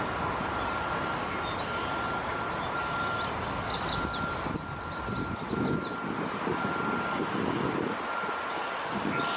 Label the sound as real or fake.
real